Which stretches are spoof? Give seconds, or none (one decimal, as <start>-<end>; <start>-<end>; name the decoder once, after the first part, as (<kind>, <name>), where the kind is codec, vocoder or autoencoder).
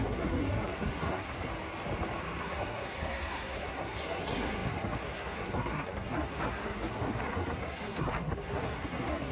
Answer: 0.0-1.5 (codec, SNAC); 2.4-9.3